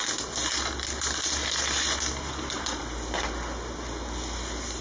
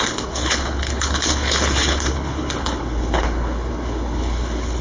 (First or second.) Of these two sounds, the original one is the first